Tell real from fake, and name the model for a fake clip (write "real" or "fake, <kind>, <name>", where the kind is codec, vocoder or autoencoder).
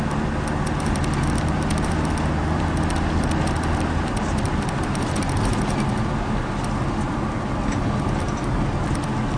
real